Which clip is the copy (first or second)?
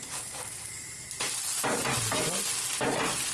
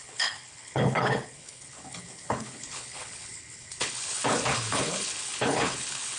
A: second